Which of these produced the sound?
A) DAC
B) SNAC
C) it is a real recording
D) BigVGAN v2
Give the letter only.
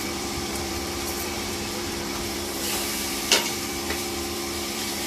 D